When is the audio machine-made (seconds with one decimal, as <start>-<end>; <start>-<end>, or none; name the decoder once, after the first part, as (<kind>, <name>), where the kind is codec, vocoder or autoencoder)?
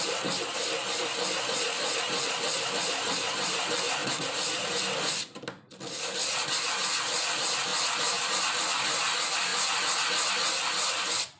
none